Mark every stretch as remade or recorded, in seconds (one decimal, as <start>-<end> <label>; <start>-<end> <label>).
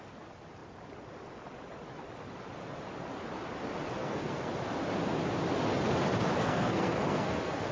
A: 0.0-4.0 recorded; 4.0-4.5 remade; 4.5-6.4 recorded; 6.4-7.7 remade